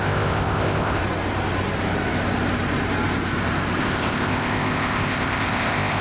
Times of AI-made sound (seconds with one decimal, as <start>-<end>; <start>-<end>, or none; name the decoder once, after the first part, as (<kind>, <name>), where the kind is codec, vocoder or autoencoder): 0.0-1.0 (codec, ZipCodec); 3.8-6.0